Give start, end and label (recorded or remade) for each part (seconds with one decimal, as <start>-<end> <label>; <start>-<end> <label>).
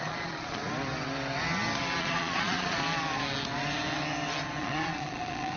0.0-0.6 remade; 0.6-2.0 recorded; 2.0-2.8 remade; 2.8-4.6 recorded; 4.6-5.6 remade